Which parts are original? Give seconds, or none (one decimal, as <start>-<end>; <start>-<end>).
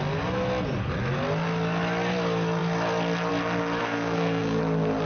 0.0-3.8; 4.6-5.1